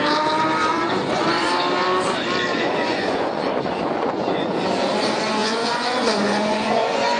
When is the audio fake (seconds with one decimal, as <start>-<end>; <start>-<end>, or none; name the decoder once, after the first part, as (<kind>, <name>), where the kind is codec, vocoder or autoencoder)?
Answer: 0.7-1.5 (vocoder, Vocos); 2.5-4.6; 5.4-7.2